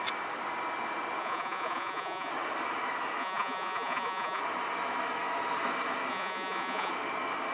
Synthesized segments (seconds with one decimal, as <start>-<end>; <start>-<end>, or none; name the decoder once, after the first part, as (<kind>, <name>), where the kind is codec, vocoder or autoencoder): 1.2-2.3 (vocoder, Vocos); 3.2-4.4; 6.1-6.9